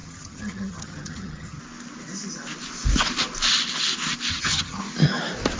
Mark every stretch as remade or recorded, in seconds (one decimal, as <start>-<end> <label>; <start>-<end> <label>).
0.0-1.6 remade; 1.6-4.3 recorded; 4.3-4.8 remade; 4.8-5.6 recorded